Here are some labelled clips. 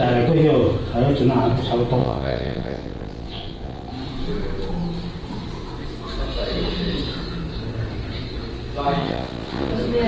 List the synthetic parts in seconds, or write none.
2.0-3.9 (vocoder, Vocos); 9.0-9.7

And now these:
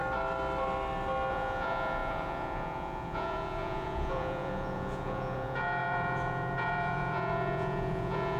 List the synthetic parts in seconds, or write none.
1.3-8.4 (vocoder, Vocos)

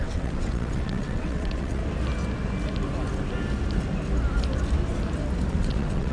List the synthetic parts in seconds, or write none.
0.0-1.8 (vocoder, WaveNeXt); 5.5-6.1